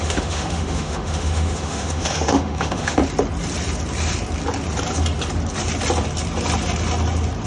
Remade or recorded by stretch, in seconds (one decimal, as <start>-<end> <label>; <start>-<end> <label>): 0.0-3.0 remade; 3.0-7.5 recorded